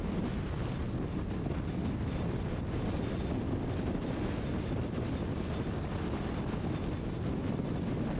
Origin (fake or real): real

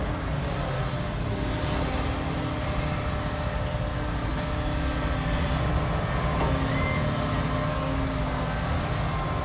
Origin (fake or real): real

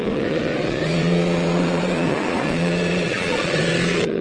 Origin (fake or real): fake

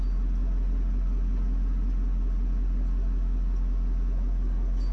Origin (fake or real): real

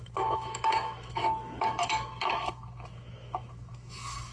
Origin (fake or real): fake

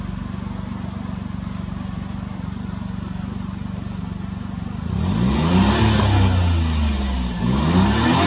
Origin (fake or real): real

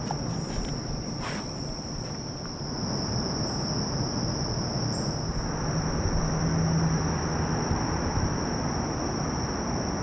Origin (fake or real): real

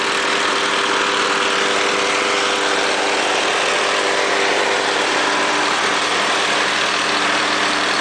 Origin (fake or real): real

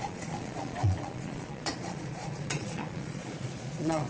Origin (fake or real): fake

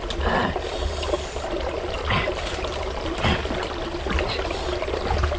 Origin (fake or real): real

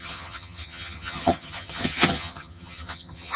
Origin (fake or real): fake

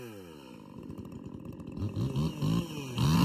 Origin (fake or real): real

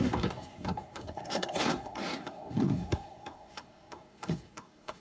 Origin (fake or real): fake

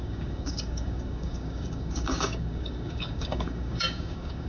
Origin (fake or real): fake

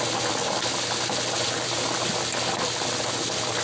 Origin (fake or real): real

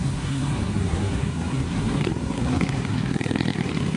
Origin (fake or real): fake